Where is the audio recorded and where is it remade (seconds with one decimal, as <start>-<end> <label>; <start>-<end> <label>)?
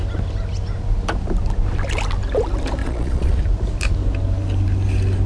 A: 0.0-2.8 recorded; 2.8-3.4 remade; 3.4-5.3 recorded